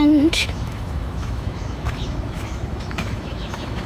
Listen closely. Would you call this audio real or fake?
fake